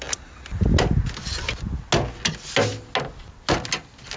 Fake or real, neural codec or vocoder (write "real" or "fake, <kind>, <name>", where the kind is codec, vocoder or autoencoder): real